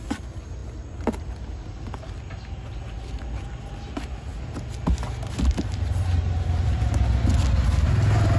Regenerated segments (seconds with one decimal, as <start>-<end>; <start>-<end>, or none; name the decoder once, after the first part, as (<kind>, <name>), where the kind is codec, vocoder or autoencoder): none